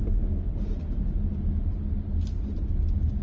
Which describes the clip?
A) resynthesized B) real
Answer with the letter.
B